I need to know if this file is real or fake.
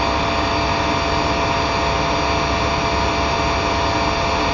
real